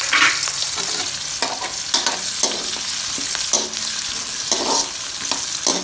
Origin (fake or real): real